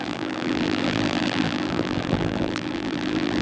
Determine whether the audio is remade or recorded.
remade